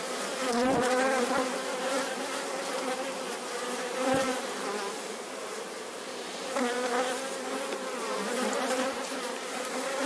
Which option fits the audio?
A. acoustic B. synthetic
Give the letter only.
B